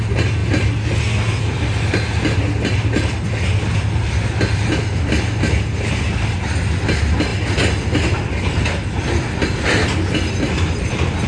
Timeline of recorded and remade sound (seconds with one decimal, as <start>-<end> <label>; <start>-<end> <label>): 0.0-11.3 recorded